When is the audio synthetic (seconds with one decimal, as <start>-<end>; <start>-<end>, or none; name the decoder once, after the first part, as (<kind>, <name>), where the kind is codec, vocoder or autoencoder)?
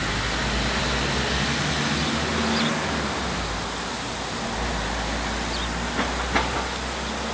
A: none